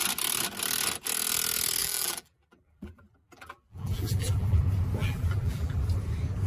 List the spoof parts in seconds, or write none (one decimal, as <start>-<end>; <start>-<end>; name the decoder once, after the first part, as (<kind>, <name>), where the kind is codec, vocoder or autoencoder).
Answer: 1.8-4.6 (vocoder, BigVGAN v2); 5.0-5.8